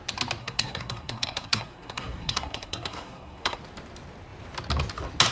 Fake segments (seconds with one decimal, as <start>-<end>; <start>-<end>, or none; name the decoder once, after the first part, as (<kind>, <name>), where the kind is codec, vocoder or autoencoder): 0.4-3.6 (codec, SNAC)